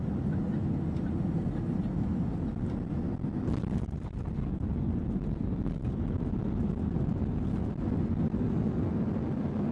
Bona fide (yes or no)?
yes